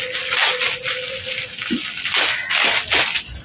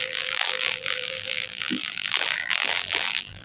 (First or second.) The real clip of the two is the first